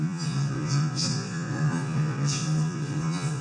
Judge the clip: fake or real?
fake